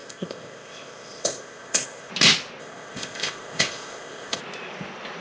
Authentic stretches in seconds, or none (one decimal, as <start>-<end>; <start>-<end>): 2.1-2.6; 4.4-5.2